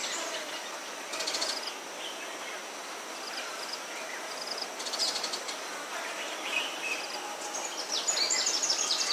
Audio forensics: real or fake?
real